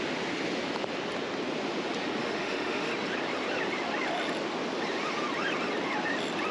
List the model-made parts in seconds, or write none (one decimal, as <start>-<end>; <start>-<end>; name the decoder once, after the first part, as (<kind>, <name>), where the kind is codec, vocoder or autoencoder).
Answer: 2.2-2.9 (autoencoder, DAC-VAE)